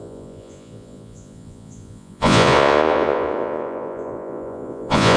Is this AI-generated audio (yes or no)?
yes